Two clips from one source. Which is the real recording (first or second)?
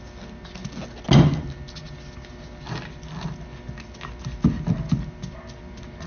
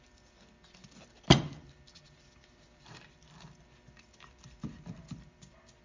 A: first